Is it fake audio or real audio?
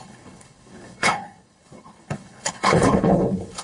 fake